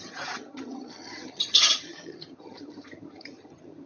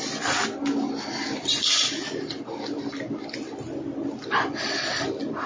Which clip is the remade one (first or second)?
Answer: first